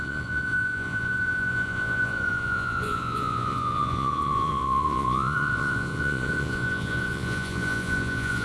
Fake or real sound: fake